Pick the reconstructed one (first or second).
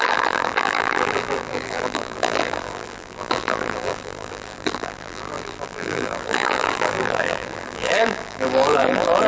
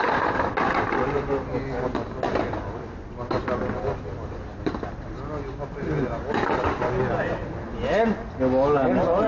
first